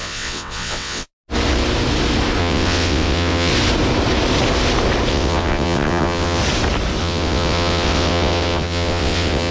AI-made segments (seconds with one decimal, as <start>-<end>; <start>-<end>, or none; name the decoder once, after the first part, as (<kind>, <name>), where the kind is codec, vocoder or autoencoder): 0.0-1.1 (vocoder, WaveNeXt); 2.4-3.5; 5.1-6.4; 7.0-9.5